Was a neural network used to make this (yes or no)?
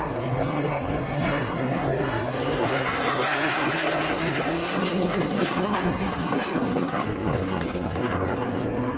yes